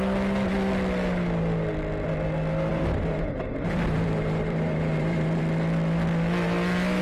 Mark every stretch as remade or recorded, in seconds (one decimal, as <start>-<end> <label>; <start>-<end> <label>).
0.0-2.7 recorded; 2.7-5.4 remade; 5.4-7.0 recorded